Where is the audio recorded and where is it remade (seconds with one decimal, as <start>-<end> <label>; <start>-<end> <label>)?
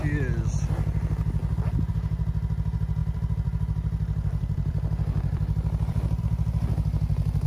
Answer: 0.0-3.0 recorded; 3.0-6.2 remade; 6.2-7.5 recorded